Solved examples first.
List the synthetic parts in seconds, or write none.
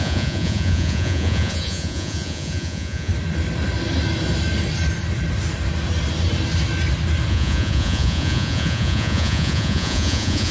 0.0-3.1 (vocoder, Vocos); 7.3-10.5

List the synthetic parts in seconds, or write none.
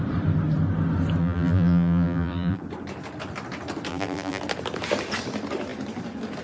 1.2-2.6 (vocoder, BigVGAN v2); 3.9-4.4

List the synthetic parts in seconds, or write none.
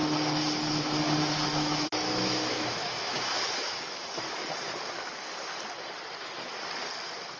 1.5-4.3 (autoencoder, DAC-VAE)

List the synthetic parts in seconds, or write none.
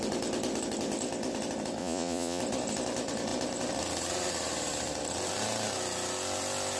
1.8-2.4 (vocoder, Vocos)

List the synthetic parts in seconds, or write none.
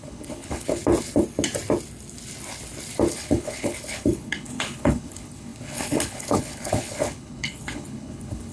0.0-0.8 (codec, HILCodec); 3.1-8.5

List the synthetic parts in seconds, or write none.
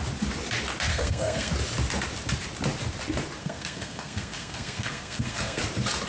0.9-1.5 (codec, SNAC); 3.4-5.6